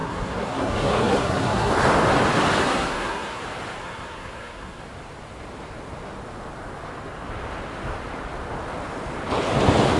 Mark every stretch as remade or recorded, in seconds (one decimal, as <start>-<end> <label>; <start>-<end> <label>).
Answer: 0.0-1.7 remade; 1.7-2.6 recorded; 2.6-3.4 remade; 3.4-3.8 recorded; 3.8-4.8 remade; 4.8-10.0 recorded